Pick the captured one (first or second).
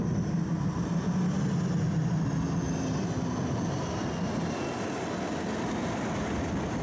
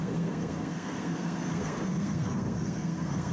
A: first